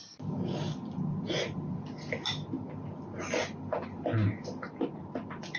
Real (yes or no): yes